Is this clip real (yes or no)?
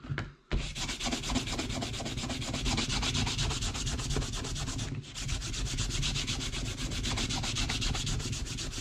yes